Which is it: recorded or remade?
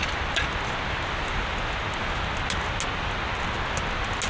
recorded